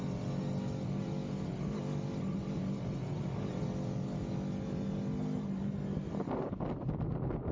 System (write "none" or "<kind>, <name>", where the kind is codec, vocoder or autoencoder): none